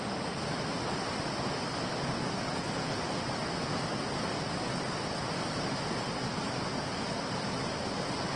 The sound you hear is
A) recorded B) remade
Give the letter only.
A